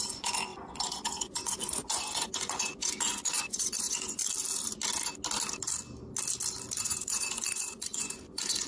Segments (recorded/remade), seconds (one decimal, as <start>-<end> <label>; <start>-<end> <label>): 0.0-4.2 remade; 4.2-6.8 recorded; 6.8-8.7 remade